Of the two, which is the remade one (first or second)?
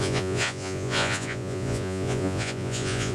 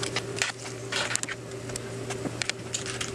first